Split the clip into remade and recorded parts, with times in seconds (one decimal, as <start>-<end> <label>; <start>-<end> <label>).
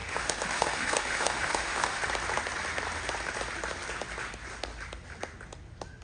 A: 0.0-2.0 remade; 2.0-6.0 recorded